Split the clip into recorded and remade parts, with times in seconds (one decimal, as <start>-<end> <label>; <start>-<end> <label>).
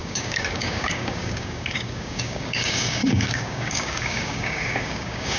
0.0-5.4 remade